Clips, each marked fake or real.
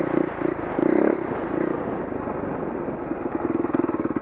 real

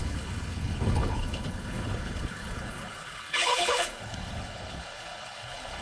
fake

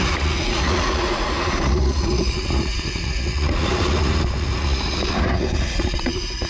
fake